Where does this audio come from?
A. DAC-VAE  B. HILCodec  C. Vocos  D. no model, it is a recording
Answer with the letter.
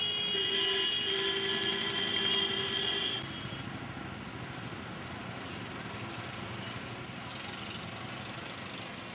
D